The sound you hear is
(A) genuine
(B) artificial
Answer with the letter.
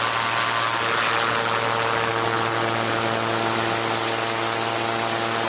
A